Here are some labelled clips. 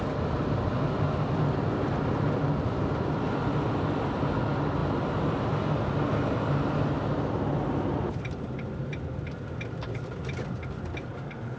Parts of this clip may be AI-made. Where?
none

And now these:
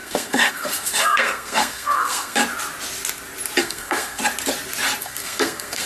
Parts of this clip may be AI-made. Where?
0.0-2.4; 3.6-4.2; 5.0-5.9

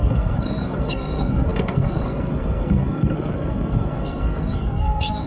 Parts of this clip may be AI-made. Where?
0.0-5.3

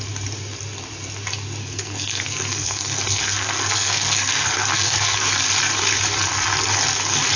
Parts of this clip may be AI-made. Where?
1.6-5.3